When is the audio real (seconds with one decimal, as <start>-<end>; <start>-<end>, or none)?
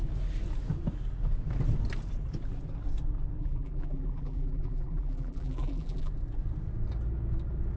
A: 0.0-3.4; 6.1-7.8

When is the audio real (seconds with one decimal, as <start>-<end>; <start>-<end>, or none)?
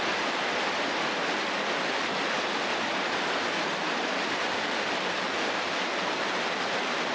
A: 0.0-2.7; 6.2-7.1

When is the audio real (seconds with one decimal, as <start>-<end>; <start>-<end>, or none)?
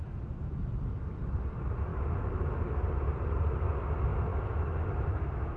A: 1.2-1.9; 2.7-4.1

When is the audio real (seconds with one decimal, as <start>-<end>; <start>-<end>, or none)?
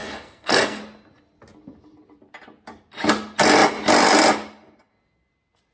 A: 0.8-5.7